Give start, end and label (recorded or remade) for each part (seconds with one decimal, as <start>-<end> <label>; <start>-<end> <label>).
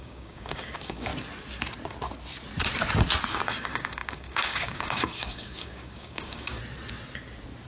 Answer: 0.0-1.1 remade; 1.1-3.3 recorded; 3.3-6.6 remade; 6.6-7.7 recorded